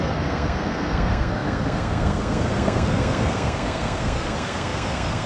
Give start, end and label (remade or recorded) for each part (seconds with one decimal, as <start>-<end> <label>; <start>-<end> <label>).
0.0-5.3 remade